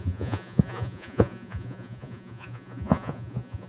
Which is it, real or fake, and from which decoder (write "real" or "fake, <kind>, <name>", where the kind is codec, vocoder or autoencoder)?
fake, vocoder, Vocos